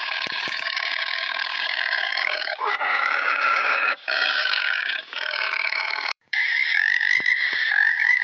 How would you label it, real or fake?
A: fake